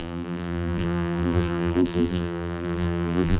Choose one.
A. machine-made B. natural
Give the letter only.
A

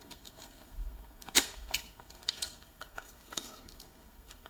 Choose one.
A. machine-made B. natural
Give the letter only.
A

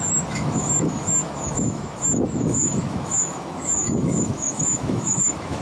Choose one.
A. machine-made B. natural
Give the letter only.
A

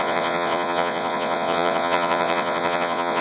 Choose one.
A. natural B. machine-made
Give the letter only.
B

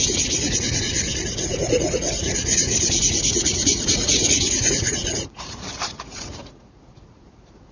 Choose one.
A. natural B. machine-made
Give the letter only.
B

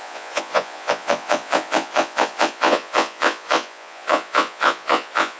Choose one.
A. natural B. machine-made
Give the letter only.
B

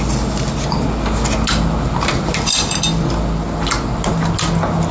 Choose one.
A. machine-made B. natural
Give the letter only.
B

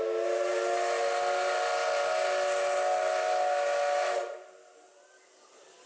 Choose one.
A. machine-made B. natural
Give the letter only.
B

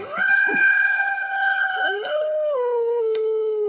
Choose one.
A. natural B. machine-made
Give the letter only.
B